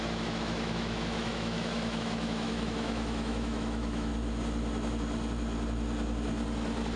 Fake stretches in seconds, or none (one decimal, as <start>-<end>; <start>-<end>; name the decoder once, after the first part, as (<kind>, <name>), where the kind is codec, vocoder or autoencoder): 0.0-4.1 (autoencoder, DAC-VAE)